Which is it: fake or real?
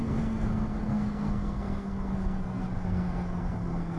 fake